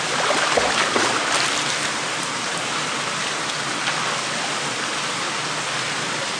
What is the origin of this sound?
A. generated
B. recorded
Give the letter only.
B